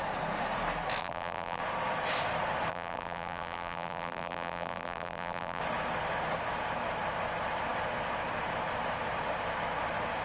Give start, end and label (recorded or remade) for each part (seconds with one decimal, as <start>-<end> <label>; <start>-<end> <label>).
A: 0.0-1.0 recorded; 1.0-1.6 remade; 1.6-2.7 recorded; 2.7-5.6 remade; 5.6-10.2 recorded